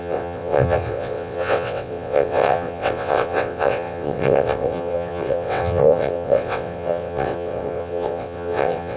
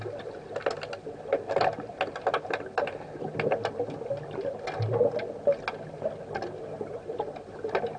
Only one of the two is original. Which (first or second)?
second